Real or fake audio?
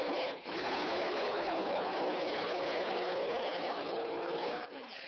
fake